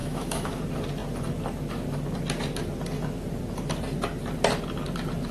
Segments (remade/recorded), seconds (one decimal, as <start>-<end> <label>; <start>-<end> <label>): 0.0-0.6 remade; 0.6-5.3 recorded